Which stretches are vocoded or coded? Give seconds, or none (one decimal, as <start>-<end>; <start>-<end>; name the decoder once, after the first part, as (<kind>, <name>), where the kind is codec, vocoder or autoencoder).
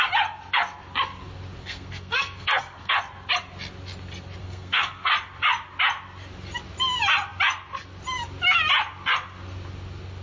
1.6-3.0 (codec, SNAC); 4.4-5.1